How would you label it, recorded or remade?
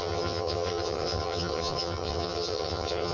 remade